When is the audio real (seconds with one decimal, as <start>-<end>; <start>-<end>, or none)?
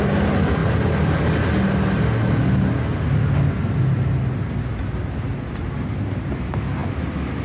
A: 0.0-7.4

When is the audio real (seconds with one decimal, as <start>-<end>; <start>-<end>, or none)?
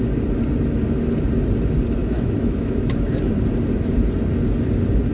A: 0.0-2.0; 3.3-5.1